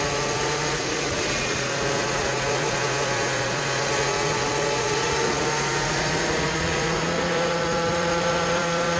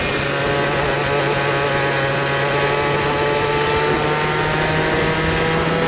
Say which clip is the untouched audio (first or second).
second